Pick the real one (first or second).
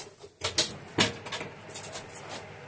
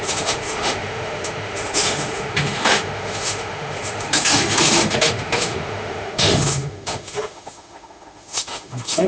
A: first